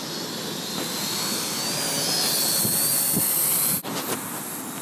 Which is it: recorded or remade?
recorded